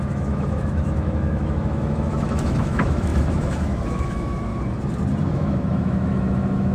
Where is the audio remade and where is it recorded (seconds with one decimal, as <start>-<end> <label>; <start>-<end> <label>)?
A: 0.0-4.5 remade; 4.5-5.3 recorded; 5.3-6.7 remade